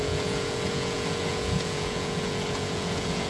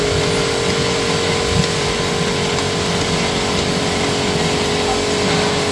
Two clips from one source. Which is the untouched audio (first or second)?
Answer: second